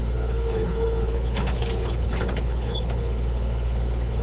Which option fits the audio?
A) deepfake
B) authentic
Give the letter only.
A